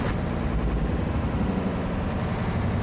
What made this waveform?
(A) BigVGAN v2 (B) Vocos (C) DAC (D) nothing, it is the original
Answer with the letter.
D